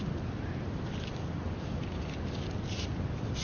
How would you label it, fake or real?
real